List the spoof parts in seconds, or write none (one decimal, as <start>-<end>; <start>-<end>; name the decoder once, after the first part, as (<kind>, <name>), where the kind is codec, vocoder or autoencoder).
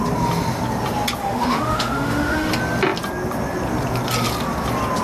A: 1.2-2.5 (autoencoder, DAC-VAE)